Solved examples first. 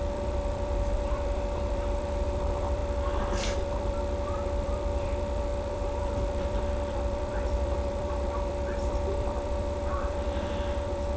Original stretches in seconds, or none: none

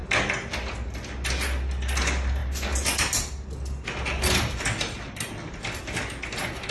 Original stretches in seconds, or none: 0.0-6.7

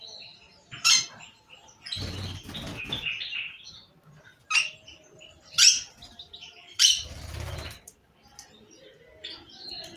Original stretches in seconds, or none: 0.0-0.7; 1.4-10.0

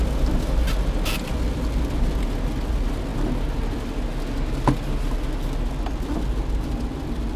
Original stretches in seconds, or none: 0.0-7.4

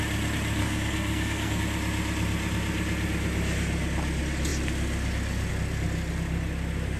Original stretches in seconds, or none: 0.0-0.6; 1.6-7.0

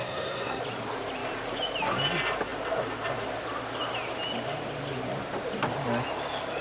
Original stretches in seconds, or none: 0.6-6.6

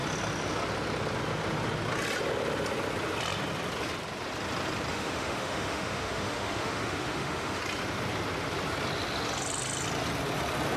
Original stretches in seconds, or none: 0.0-4.9; 7.6-10.8

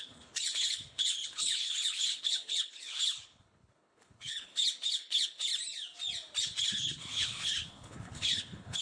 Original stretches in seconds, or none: 5.5-6.4